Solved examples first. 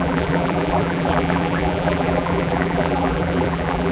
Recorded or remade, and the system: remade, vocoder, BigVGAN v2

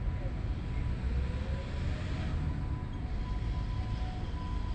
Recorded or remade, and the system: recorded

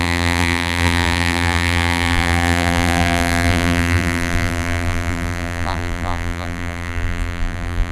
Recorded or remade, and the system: remade, vocoder, BigVGAN v2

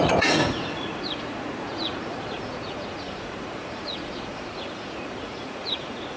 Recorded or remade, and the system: remade, vocoder, Vocos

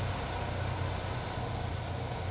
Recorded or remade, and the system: recorded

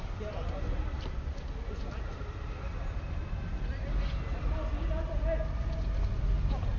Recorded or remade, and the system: recorded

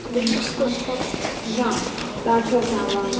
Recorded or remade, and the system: recorded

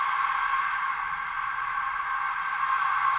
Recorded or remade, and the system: recorded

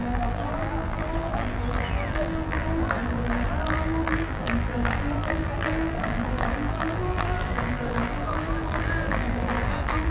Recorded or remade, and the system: remade, vocoder, BigVGAN v2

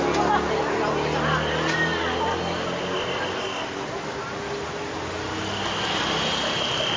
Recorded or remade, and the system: recorded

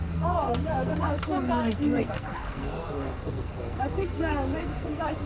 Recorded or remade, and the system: remade, codec, SNAC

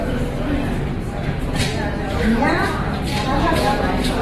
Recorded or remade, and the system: remade, vocoder, BigVGAN v2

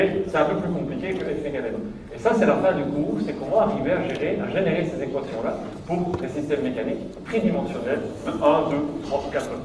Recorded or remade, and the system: recorded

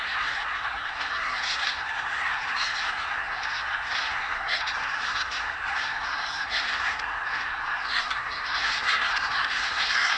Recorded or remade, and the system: remade, codec, SNAC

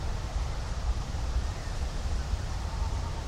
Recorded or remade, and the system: remade, vocoder, BigVGAN v2